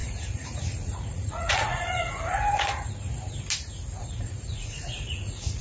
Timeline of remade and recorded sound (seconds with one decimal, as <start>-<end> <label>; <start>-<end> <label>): 0.0-2.9 remade; 2.9-4.0 recorded; 4.0-5.6 remade